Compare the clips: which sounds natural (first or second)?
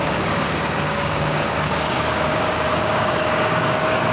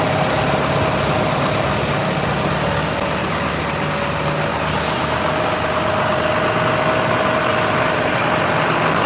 second